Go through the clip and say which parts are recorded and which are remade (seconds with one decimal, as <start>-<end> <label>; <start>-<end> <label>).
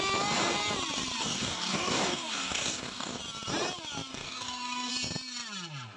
0.0-1.2 recorded; 1.2-3.2 remade; 3.2-4.1 recorded; 4.1-4.9 remade; 4.9-6.0 recorded